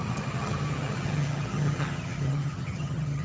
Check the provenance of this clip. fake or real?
fake